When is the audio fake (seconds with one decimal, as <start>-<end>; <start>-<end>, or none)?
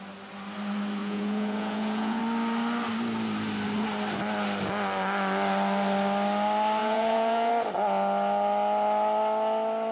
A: 1.0-2.2; 6.8-7.5